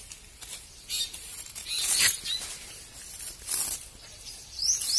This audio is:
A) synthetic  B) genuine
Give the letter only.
B